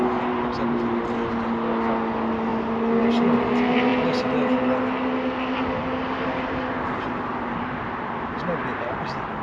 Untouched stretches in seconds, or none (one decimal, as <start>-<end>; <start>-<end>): 0.0-9.4